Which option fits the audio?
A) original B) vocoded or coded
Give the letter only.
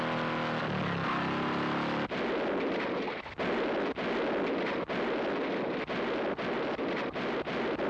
A